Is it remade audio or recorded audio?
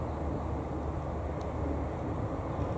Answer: recorded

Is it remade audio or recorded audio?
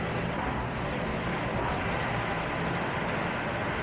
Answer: recorded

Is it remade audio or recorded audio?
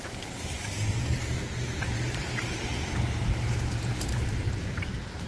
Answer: remade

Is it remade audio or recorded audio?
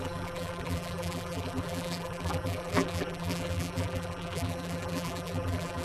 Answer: remade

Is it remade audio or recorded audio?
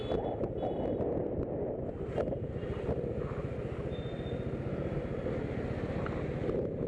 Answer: recorded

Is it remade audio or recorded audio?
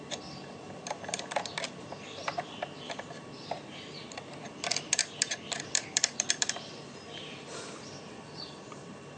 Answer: remade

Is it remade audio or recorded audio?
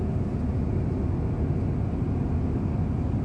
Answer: recorded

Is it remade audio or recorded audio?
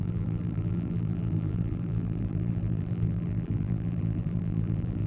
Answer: remade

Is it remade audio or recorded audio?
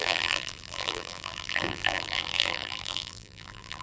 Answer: remade